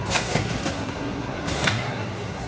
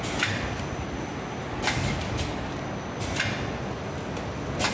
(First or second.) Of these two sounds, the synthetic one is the first